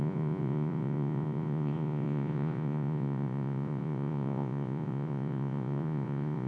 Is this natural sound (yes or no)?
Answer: no